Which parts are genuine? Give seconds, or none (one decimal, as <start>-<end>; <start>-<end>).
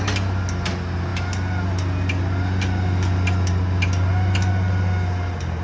0.0-5.6